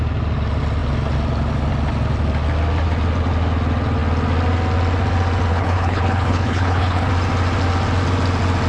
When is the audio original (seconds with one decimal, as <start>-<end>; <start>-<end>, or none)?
0.0-5.5; 7.1-8.7